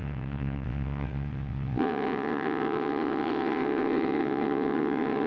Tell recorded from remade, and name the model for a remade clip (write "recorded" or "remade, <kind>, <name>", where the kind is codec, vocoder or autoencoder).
remade, vocoder, WaveNeXt